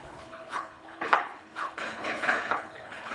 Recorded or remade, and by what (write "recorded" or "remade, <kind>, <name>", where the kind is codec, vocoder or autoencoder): remade, codec, HILCodec